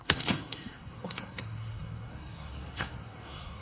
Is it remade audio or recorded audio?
remade